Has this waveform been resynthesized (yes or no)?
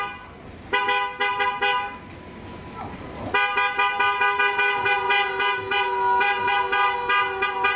no